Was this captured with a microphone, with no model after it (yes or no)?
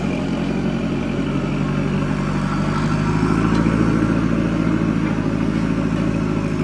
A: yes